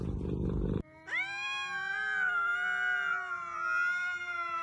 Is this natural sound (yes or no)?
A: yes